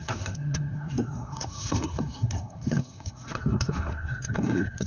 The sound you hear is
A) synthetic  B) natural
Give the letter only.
A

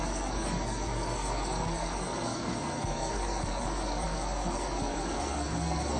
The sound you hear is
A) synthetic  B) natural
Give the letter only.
A